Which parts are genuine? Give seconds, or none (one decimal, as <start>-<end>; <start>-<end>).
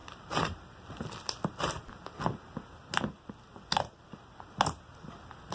0.0-5.5